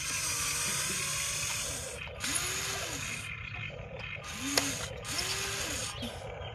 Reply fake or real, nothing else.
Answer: real